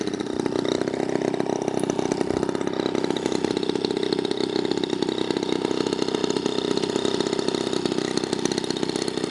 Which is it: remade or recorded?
recorded